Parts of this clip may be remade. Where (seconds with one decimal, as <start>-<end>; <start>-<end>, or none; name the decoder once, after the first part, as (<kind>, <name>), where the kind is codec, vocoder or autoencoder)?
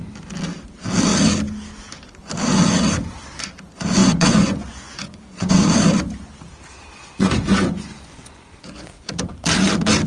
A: 4.0-5.5 (vocoder, Vocos); 7.0-8.9